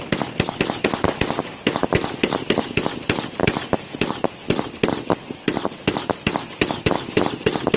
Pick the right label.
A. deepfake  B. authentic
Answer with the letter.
B